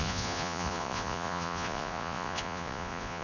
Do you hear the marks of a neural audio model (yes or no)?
yes